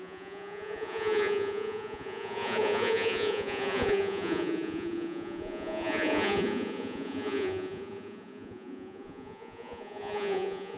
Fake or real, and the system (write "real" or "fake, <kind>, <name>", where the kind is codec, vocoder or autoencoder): fake, vocoder, Vocos